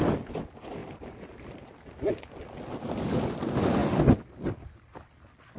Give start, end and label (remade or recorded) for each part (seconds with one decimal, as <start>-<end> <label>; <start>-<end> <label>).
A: 0.0-0.8 recorded; 0.8-2.1 remade; 2.1-5.6 recorded